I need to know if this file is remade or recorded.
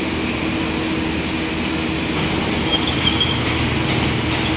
recorded